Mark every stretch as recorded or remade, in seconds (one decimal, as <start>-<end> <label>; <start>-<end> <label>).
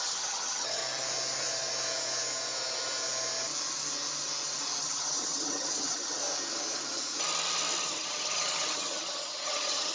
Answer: 0.0-0.8 remade; 0.8-4.8 recorded; 4.8-6.2 remade; 6.2-7.8 recorded; 7.8-9.9 remade